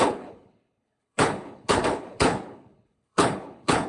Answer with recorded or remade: remade